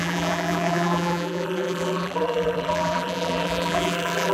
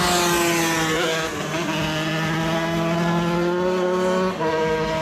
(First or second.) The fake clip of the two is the first